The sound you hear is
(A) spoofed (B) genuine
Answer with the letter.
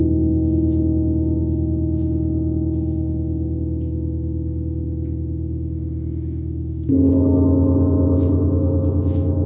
A